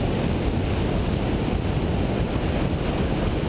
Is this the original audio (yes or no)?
yes